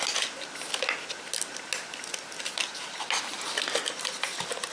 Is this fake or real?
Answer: real